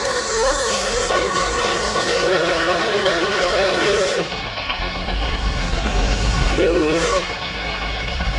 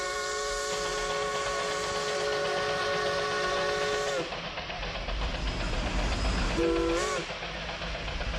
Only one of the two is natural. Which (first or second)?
second